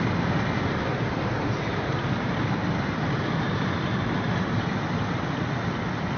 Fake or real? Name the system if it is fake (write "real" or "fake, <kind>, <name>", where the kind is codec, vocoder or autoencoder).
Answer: fake, vocoder, BigVGAN v2